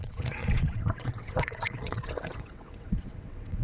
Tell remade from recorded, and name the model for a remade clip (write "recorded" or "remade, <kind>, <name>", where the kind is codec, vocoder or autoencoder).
remade, vocoder, WaveNeXt